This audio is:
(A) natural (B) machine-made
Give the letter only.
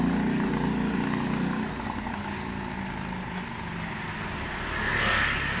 A